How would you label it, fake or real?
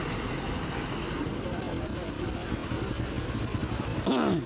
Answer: real